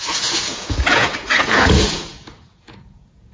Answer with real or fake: fake